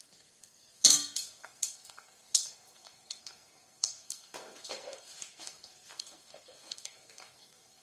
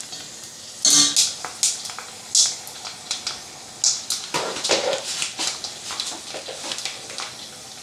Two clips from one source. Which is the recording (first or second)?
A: second